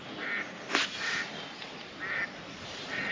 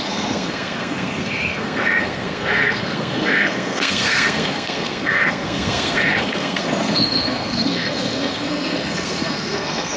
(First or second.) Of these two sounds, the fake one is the second